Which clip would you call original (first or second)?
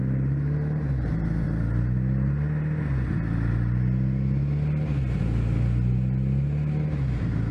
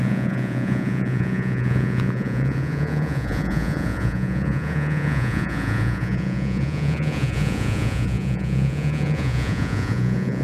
first